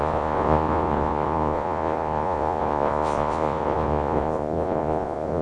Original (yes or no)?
no